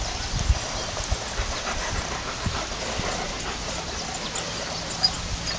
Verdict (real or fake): real